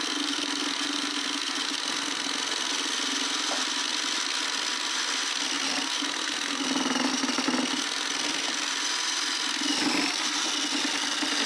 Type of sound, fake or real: real